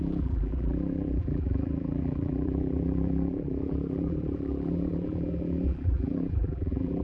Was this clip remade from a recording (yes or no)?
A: yes